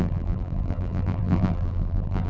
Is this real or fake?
fake